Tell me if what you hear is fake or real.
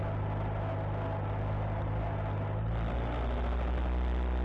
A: real